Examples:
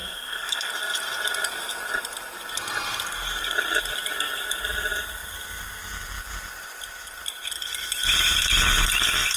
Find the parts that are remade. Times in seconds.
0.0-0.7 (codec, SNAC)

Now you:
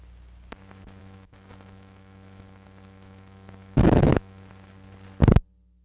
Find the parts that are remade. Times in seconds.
1.0-4.5 (autoencoder, DAC-VAE)

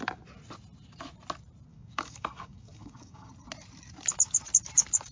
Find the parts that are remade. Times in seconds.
1.7-3.3 (codec, DAC)

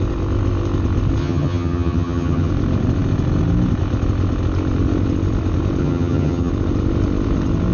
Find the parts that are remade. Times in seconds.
1.2-2.5 (vocoder, HiFi-GAN); 5.8-6.5

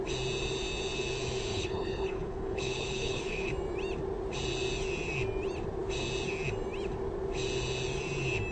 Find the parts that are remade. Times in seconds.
1.5-3.5 (codec, HILCodec)

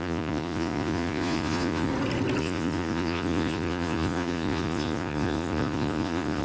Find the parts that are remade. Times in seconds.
0.0-1.9 (vocoder, Vocos); 2.4-6.4